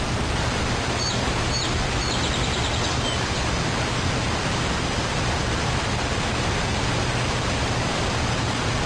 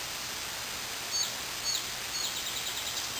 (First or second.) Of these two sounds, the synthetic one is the first